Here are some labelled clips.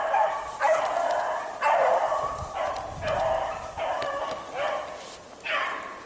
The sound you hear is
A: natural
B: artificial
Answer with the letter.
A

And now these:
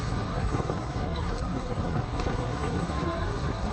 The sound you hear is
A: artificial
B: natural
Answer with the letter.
A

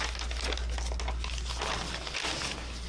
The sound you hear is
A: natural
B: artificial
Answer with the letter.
A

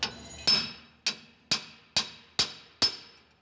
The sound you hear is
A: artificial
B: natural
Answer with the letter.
B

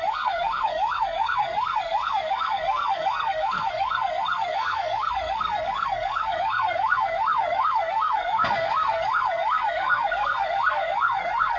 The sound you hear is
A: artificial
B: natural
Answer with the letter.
A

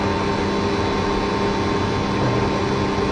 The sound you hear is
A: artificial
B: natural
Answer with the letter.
B